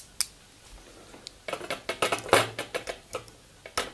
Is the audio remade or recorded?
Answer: recorded